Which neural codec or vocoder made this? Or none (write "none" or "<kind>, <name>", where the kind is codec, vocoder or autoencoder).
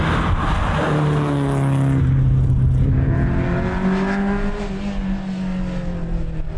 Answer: none